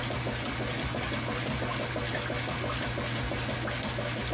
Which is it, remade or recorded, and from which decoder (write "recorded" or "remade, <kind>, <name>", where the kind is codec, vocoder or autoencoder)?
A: recorded